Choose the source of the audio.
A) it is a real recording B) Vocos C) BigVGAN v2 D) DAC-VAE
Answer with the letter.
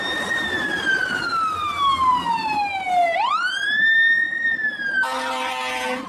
A